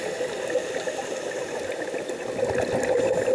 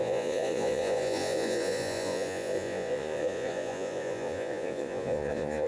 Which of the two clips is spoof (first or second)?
second